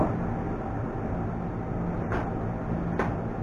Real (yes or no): yes